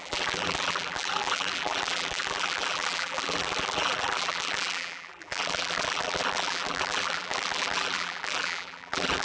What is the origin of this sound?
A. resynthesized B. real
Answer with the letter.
A